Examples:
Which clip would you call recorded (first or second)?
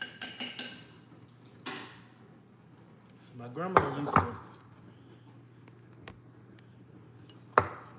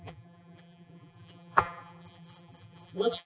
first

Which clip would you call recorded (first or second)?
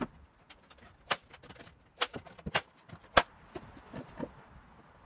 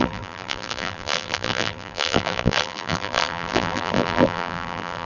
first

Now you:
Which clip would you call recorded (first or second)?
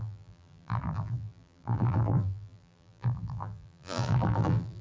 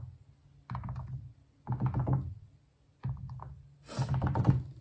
second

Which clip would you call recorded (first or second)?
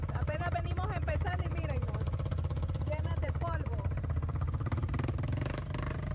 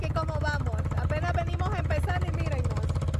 second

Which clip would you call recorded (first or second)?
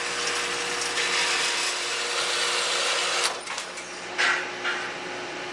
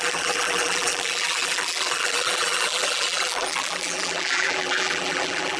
first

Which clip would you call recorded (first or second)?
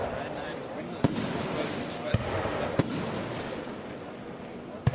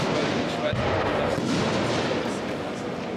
second